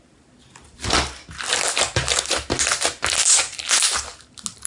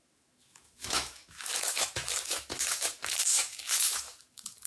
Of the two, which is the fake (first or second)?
second